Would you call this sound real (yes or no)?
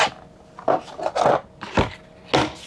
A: yes